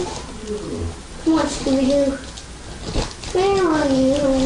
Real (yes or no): yes